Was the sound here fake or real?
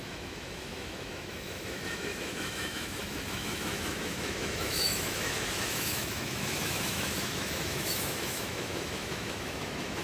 fake